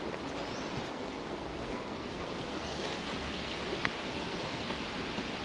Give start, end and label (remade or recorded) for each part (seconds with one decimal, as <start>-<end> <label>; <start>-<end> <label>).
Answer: 0.0-0.9 recorded; 0.9-3.6 remade; 3.6-4.0 recorded; 4.0-4.8 remade; 4.8-5.4 recorded